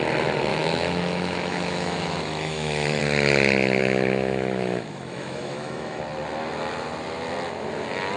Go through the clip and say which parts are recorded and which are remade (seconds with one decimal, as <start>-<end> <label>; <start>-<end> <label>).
0.0-0.5 recorded; 0.5-3.0 remade; 3.0-3.8 recorded; 3.8-6.0 remade; 6.0-8.2 recorded